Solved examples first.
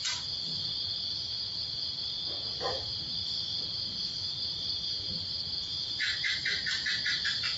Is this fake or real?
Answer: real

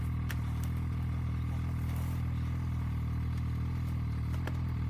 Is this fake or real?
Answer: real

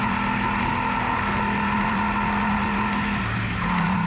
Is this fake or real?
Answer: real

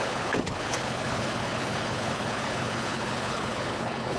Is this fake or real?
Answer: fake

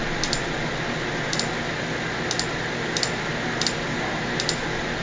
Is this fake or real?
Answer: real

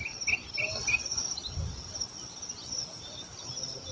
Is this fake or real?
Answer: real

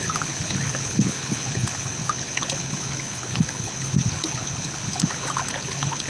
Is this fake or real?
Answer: fake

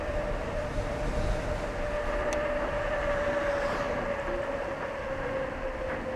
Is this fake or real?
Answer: real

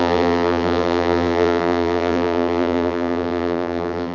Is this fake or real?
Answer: fake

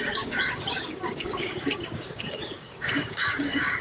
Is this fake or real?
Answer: fake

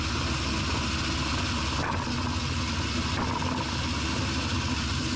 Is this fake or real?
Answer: real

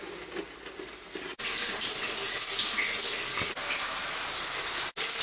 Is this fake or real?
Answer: real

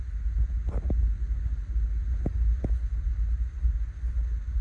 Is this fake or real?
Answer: real